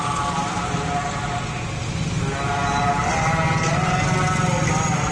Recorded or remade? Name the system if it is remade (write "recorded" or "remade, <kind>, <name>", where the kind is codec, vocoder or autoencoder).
recorded